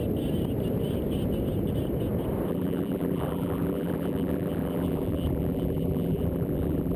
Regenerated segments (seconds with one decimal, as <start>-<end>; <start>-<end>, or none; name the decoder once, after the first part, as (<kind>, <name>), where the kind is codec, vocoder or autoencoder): 2.5-7.0 (vocoder, BigVGAN v2)